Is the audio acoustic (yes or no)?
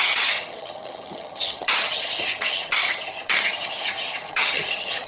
no